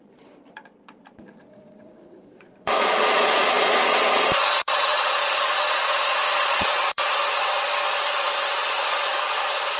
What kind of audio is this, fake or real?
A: fake